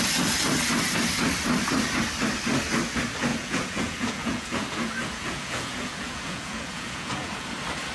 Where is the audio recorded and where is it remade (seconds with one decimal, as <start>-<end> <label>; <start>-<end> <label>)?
0.0-3.3 recorded; 3.3-7.5 remade; 7.5-7.9 recorded